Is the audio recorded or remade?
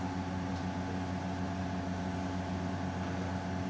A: recorded